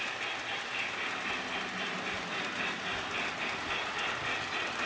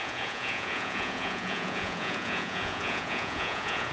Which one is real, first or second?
first